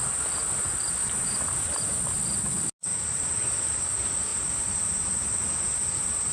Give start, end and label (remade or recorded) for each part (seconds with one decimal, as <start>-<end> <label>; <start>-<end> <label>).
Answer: 0.0-1.0 recorded; 1.0-2.0 remade; 2.0-2.9 recorded; 2.9-3.8 remade; 3.8-4.3 recorded; 4.3-5.8 remade; 5.8-6.3 recorded